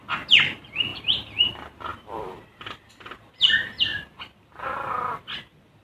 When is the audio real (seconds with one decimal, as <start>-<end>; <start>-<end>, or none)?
0.0-0.9; 1.5-1.9; 2.7-5.8